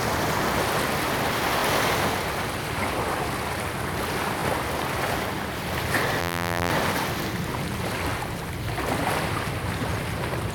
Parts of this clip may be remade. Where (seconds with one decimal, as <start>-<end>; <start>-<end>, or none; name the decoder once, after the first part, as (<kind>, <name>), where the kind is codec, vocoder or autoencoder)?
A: 6.2-6.7 (vocoder, BigVGAN v2)